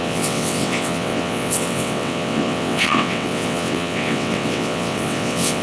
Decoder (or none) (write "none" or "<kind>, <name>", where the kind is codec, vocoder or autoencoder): vocoder, WaveNeXt